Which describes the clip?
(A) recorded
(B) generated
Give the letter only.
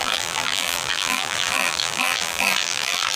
B